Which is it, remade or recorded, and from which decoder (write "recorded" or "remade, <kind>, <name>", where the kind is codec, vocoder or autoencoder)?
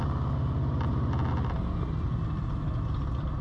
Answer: recorded